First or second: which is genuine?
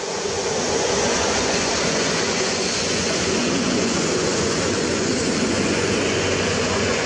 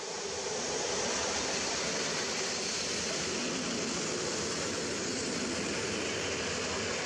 second